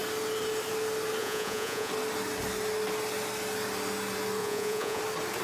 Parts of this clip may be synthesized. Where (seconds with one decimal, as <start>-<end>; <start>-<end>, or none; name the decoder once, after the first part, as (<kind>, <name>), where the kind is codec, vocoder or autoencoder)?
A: 1.2-1.9 (vocoder, Vocos); 4.4-5.0